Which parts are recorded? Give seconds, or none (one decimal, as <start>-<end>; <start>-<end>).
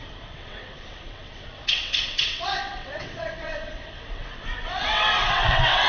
none